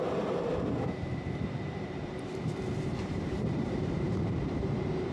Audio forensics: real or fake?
fake